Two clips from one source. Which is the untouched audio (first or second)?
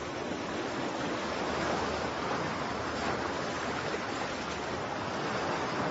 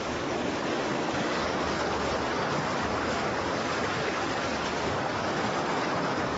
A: first